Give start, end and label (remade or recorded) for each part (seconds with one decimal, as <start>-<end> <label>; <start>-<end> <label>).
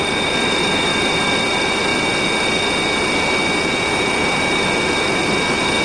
0.0-1.9 remade; 1.9-5.8 recorded